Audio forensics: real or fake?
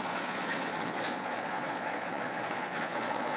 fake